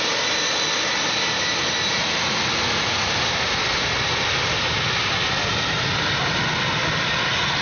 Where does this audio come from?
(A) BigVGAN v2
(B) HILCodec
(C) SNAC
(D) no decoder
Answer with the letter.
D